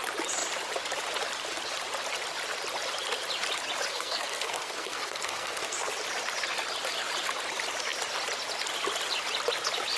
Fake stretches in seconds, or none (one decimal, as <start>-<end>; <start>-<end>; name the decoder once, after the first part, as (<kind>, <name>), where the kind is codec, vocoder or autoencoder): 3.9-5.9 (codec, SNAC)